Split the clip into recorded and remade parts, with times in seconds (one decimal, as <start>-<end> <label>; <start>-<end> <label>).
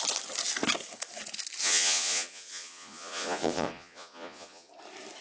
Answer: 0.0-1.6 recorded; 1.6-4.7 remade; 4.7-5.2 recorded